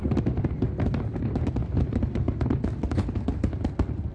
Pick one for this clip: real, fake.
real